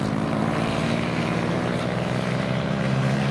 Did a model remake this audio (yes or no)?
yes